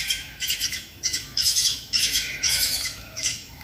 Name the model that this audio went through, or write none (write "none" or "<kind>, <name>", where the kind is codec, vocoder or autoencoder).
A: autoencoder, DAC-VAE